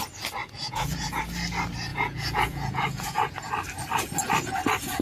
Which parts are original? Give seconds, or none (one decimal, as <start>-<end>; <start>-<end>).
0.0-0.4; 1.2-1.9; 3.5-5.0